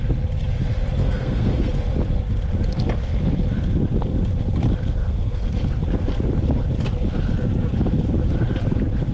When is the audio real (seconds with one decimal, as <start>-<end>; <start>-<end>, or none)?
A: 0.0-1.0; 1.7-5.0; 5.8-9.1